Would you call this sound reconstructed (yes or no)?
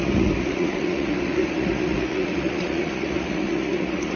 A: yes